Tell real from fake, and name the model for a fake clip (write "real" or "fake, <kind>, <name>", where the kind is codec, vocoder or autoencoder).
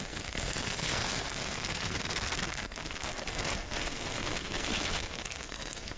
fake, codec, SNAC